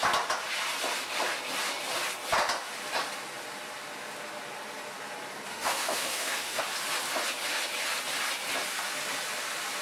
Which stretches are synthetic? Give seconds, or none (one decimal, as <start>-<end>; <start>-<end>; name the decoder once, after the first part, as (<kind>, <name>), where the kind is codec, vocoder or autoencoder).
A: 5.5-6.6 (autoencoder, DAC-VAE)